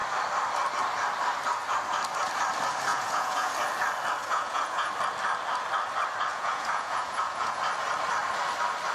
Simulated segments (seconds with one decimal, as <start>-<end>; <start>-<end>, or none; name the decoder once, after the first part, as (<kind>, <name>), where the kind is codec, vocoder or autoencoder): 2.9-3.5 (vocoder, Vocos); 4.2-4.9; 6.3-7.6